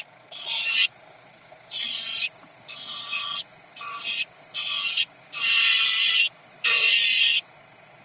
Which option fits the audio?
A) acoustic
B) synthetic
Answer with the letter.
B